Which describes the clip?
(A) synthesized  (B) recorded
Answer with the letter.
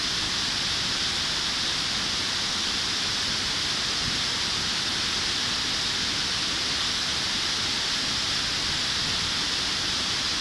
B